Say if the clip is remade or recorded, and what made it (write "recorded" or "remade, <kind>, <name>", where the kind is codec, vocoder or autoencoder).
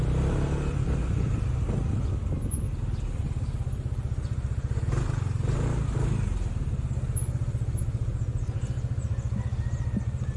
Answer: recorded